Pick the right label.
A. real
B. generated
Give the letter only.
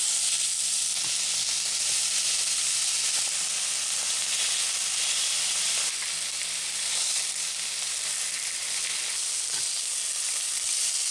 A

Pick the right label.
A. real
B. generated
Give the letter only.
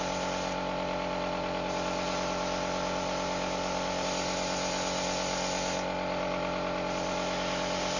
A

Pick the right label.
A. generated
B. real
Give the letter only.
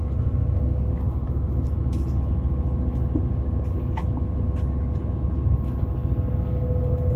B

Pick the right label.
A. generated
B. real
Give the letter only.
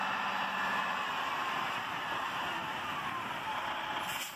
B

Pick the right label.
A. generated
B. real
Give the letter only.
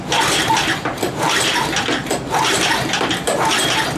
B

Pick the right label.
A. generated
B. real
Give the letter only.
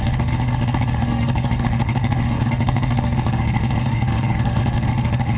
A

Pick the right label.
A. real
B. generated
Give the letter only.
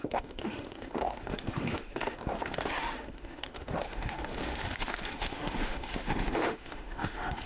B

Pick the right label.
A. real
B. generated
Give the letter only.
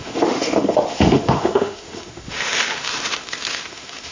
B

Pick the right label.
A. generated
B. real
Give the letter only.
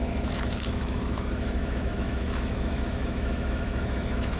A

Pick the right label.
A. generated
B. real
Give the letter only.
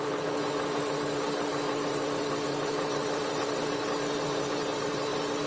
B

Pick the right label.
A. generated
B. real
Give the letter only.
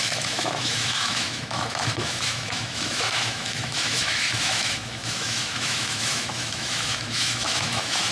A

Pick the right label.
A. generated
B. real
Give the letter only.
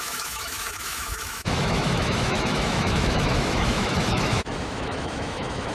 A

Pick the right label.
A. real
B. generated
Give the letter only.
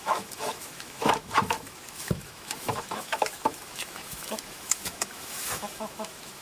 B